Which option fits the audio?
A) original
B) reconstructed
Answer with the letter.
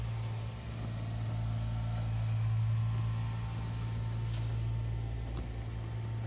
A